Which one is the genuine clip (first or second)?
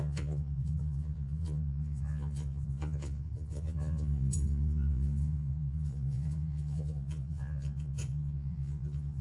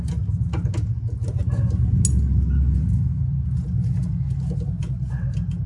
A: second